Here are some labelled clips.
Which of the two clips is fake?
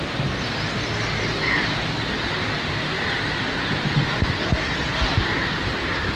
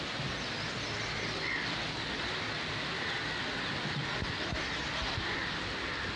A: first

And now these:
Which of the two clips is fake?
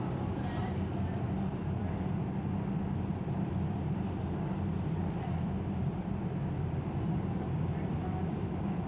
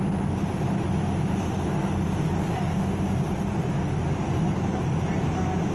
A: first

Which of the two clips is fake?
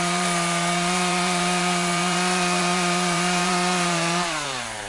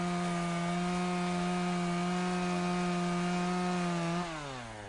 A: first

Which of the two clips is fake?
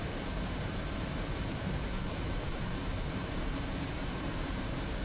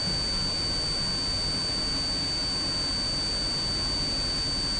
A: first